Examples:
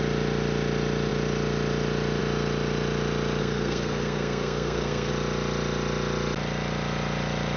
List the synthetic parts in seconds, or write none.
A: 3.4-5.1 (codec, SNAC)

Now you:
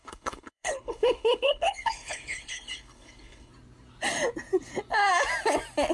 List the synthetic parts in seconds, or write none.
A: 0.0-3.5 (codec, HILCodec)

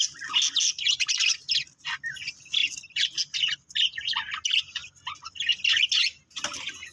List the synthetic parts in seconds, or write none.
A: none

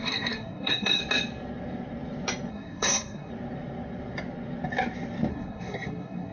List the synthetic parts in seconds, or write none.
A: 0.0-1.0 (codec, SNAC); 2.5-3.3; 5.3-6.3

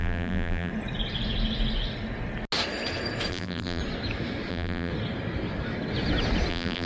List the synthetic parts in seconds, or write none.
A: 0.0-0.7 (vocoder, BigVGAN v2); 3.3-3.8; 4.5-4.9; 6.5-6.9

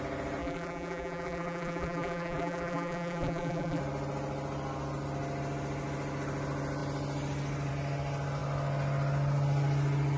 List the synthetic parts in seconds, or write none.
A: 0.4-3.8 (vocoder, BigVGAN v2)

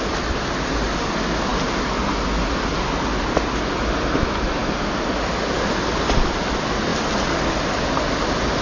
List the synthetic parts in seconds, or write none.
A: none

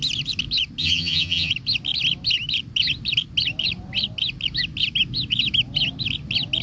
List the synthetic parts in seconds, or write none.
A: 0.8-1.5 (vocoder, HiFi-GAN)